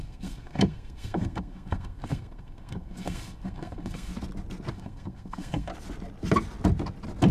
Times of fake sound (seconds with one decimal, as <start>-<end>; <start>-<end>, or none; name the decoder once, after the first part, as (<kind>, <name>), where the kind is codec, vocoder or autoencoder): 0.0-4.1 (codec, SNAC); 4.7-5.7